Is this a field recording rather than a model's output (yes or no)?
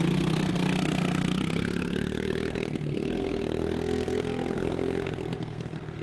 no